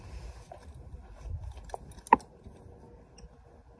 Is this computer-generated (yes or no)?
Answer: no